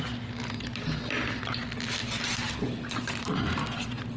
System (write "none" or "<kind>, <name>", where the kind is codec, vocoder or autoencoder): none